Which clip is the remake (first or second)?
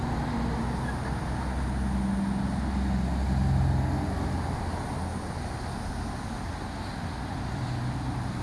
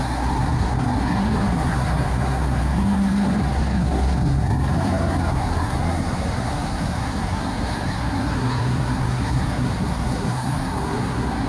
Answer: second